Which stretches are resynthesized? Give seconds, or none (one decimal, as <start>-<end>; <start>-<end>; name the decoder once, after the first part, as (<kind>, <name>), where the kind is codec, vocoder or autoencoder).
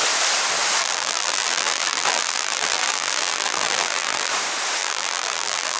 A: 0.8-4.3 (vocoder, BigVGAN v2); 4.8-5.8